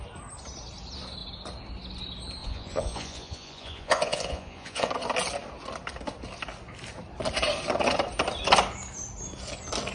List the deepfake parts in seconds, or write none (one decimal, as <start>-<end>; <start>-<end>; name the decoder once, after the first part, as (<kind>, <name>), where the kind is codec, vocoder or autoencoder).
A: 2.4-4.9 (vocoder, Vocos)